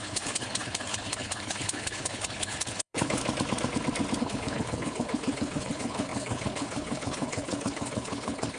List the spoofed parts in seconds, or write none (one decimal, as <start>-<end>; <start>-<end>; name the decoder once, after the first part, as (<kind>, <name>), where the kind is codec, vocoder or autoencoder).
0.0-3.2 (codec, HILCodec); 4.2-8.6